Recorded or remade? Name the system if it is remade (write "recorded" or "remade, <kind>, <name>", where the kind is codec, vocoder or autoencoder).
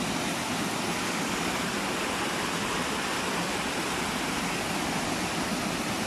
recorded